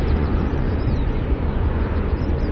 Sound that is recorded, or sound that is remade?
remade